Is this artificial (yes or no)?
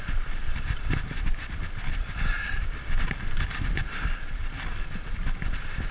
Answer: no